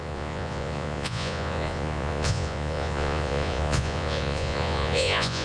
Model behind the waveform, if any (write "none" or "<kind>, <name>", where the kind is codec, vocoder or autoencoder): vocoder, Vocos